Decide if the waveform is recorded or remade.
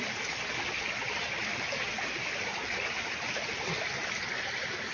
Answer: recorded